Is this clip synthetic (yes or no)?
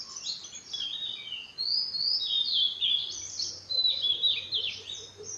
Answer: no